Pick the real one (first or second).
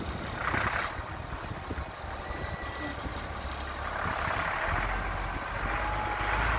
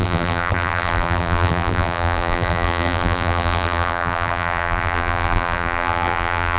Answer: first